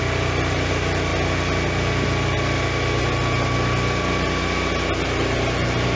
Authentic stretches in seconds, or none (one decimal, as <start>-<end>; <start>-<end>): 0.0-6.0